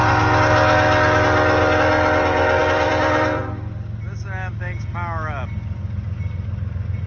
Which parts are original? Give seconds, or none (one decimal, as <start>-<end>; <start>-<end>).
0.0-2.6; 3.4-7.1